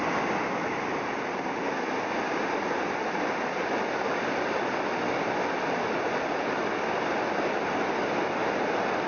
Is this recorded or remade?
recorded